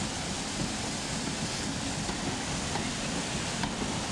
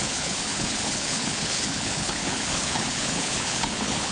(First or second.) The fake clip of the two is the second